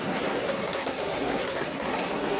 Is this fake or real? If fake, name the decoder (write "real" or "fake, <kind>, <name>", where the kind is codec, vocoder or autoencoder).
fake, codec, SNAC